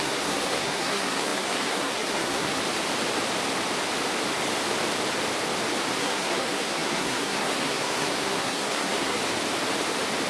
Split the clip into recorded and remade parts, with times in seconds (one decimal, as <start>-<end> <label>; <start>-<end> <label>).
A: 0.0-2.6 remade; 2.6-6.0 recorded; 6.0-9.2 remade; 9.2-10.3 recorded